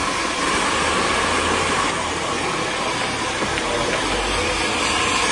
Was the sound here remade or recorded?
recorded